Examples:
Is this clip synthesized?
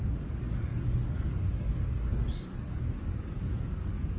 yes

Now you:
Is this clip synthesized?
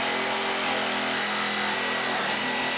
no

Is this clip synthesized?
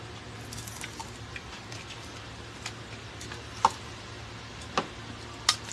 no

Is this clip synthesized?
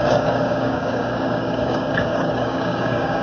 yes